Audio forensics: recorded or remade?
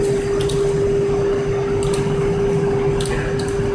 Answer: recorded